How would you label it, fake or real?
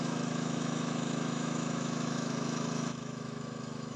fake